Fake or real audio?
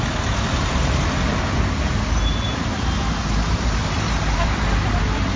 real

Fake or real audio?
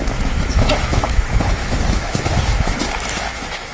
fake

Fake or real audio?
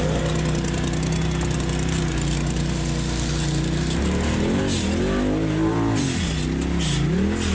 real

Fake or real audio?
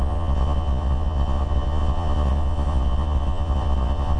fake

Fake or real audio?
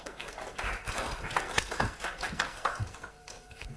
fake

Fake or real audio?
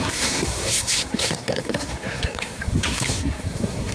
fake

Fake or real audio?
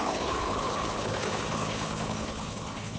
fake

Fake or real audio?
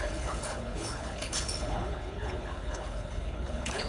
fake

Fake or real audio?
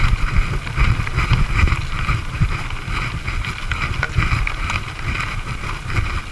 real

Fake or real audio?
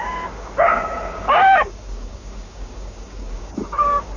fake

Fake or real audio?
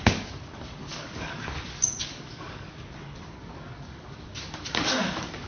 fake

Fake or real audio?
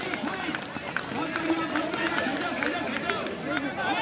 real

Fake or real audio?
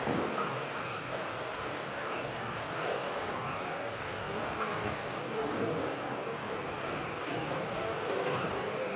fake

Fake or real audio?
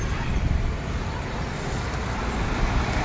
real